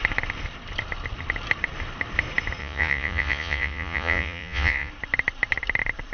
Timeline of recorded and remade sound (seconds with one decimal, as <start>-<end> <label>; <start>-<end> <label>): 0.0-2.6 recorded; 2.6-4.9 remade; 4.9-6.1 recorded